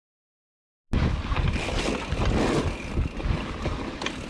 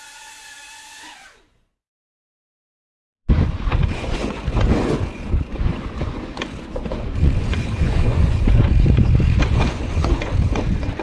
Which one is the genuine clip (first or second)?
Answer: first